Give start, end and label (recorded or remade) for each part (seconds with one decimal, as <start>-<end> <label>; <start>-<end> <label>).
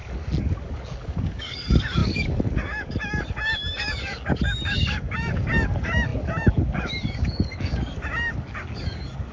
0.0-9.3 remade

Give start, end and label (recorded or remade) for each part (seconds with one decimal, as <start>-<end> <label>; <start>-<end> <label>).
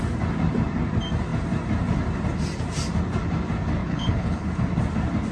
0.0-3.8 recorded; 3.8-4.5 remade; 4.5-5.3 recorded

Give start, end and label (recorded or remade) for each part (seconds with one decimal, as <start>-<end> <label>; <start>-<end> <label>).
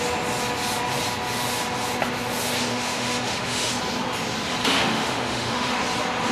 0.0-2.7 recorded; 2.7-3.7 remade; 3.7-4.6 recorded; 4.6-5.8 remade; 5.8-6.3 recorded